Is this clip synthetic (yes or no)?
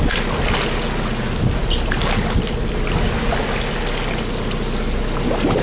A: no